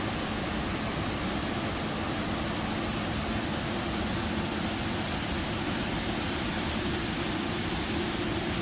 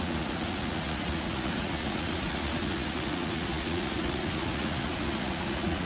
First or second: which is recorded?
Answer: first